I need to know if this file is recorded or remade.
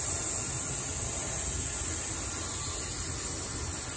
recorded